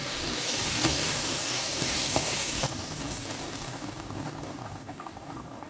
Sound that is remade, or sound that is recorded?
remade